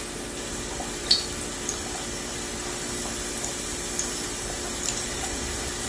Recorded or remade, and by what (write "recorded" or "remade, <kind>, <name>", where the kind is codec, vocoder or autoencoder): recorded